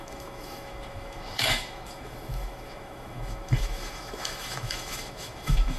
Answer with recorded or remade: remade